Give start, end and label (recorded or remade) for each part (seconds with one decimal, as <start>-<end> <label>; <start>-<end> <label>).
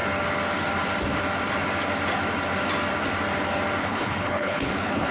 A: 0.0-3.8 recorded; 3.8-5.1 remade